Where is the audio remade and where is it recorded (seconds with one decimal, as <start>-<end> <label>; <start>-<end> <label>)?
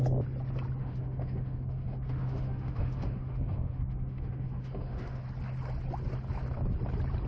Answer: 0.0-0.8 recorded; 0.8-5.2 remade; 5.2-7.3 recorded